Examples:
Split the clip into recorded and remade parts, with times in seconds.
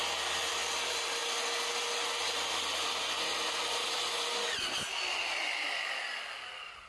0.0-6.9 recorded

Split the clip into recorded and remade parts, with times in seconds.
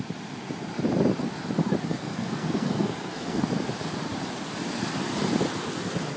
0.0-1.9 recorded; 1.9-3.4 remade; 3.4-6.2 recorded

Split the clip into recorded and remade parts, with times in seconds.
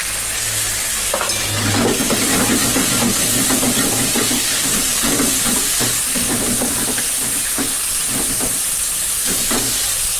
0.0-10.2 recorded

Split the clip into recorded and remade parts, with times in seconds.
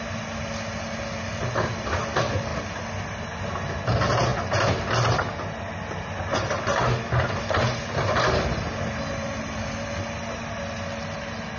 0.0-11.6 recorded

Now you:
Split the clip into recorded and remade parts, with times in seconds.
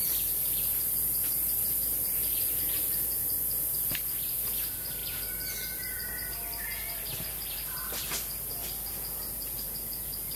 0.0-10.4 recorded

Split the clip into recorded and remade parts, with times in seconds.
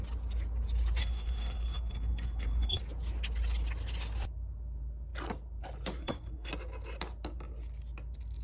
0.0-1.0 recorded; 1.0-2.8 remade; 2.8-6.0 recorded; 6.0-6.5 remade; 6.5-8.4 recorded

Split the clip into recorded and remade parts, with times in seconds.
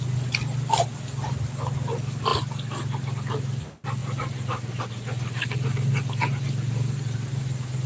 0.0-7.9 recorded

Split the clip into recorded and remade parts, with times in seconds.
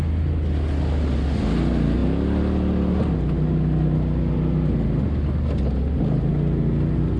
0.0-7.2 recorded